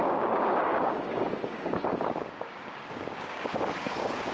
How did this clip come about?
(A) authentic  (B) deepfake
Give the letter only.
B